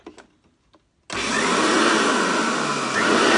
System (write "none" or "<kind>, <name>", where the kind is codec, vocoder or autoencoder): none